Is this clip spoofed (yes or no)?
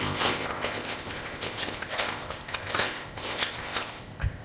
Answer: yes